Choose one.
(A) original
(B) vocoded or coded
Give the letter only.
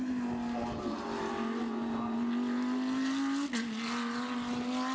A